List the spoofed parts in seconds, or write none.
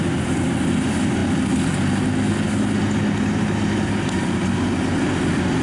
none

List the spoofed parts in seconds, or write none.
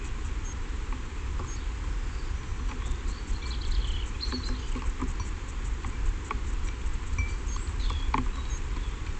6.9-7.6 (vocoder, BigVGAN v2)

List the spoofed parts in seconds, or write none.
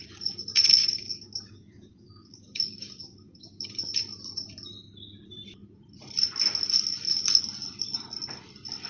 0.8-3.8 (codec, DAC)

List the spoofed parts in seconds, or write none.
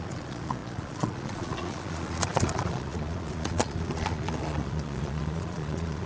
0.0-6.1 (vocoder, Vocos)